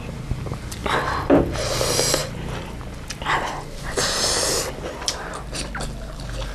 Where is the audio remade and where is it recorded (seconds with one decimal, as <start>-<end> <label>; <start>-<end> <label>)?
0.0-0.8 recorded; 0.8-1.4 remade; 1.4-2.2 recorded; 2.2-5.3 remade; 5.3-6.5 recorded